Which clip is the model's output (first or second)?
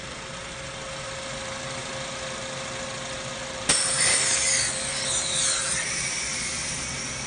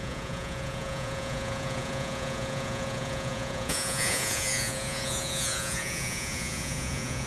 second